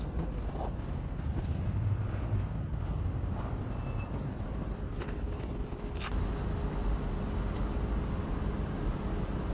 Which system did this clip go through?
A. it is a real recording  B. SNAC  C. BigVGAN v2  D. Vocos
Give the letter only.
A